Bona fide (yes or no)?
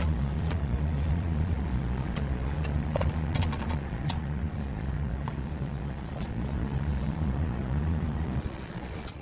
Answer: no